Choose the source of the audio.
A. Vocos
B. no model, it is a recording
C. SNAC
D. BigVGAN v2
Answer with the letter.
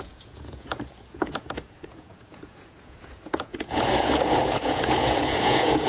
A